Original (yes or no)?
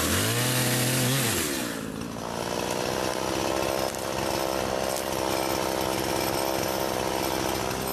yes